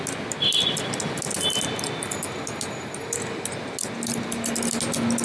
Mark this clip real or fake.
real